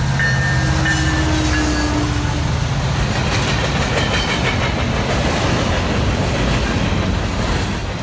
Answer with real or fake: real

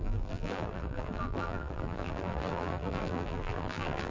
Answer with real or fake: fake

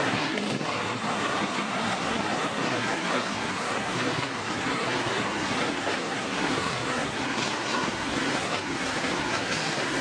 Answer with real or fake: fake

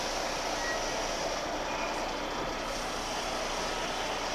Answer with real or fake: real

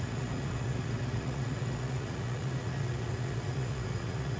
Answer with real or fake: fake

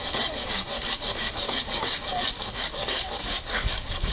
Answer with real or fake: fake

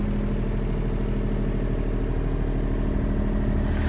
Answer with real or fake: real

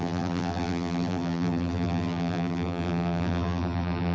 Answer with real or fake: fake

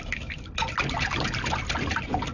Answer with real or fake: real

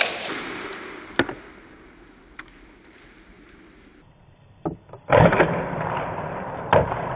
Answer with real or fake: fake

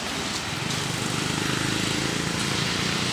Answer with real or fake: real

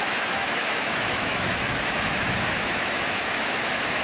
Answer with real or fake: fake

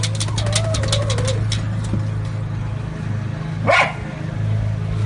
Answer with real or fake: real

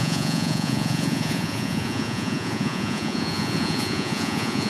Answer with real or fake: fake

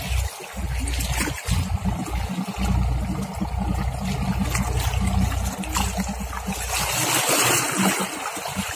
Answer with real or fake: real